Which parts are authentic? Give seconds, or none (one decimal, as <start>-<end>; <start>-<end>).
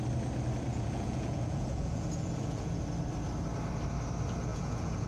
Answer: 0.0-0.7; 2.8-4.5